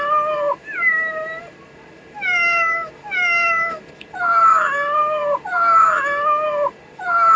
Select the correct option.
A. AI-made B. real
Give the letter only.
A